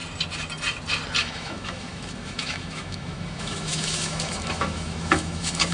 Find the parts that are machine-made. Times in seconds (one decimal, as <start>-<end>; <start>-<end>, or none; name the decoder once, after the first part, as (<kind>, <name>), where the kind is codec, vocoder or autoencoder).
1.2-5.7 (autoencoder, DAC-VAE)